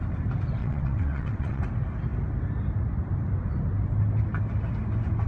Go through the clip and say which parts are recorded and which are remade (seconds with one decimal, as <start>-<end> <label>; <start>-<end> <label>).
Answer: 0.0-0.6 recorded; 0.6-1.6 remade; 1.6-5.3 recorded